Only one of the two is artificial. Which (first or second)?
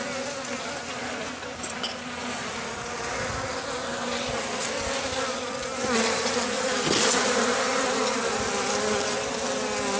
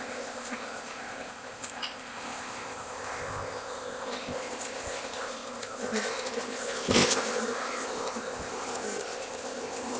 second